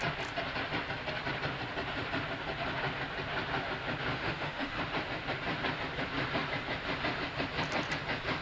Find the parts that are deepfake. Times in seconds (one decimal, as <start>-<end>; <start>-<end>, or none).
4.1-4.8